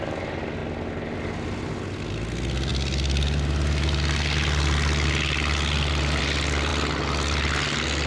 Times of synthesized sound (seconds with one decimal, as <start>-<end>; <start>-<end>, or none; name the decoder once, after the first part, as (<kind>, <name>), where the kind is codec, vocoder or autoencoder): none